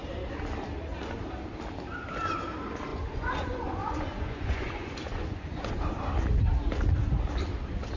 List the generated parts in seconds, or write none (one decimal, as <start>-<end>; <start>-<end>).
2.9-5.9